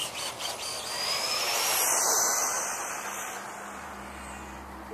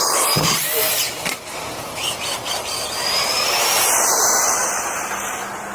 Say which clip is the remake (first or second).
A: second